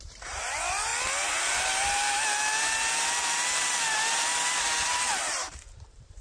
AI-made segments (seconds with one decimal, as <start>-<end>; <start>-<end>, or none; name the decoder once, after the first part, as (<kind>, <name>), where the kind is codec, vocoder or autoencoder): 0.0-0.9 (vocoder, BigVGAN v2); 4.6-6.2